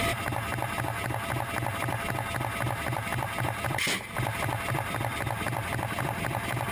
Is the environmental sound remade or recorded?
remade